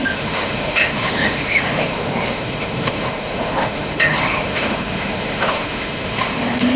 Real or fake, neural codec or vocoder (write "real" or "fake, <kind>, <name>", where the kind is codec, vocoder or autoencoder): fake, autoencoder, DAC-VAE